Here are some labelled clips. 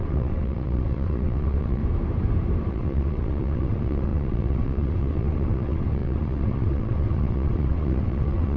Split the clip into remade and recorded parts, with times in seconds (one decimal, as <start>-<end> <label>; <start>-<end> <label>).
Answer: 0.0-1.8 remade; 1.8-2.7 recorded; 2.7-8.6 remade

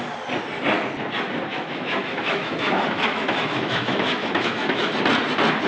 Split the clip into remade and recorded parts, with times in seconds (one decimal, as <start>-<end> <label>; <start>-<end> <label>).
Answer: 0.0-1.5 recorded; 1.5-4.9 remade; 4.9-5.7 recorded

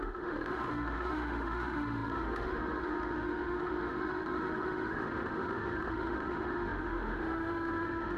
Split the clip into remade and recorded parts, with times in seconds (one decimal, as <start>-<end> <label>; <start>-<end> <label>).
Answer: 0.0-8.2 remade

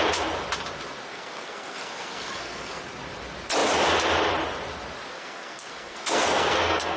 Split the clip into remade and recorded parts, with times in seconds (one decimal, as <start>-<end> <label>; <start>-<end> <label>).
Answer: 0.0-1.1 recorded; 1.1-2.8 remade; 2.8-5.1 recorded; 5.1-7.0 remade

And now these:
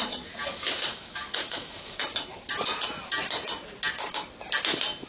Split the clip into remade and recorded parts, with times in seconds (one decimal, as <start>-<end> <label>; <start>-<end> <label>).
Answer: 0.0-0.9 recorded; 0.9-2.0 remade; 2.0-5.1 recorded